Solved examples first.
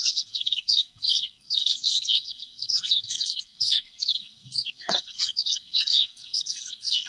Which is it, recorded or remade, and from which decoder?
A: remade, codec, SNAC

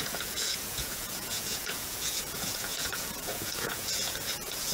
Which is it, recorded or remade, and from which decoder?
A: remade, vocoder, Vocos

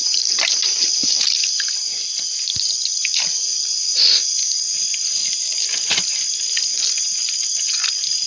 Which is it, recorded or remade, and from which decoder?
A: recorded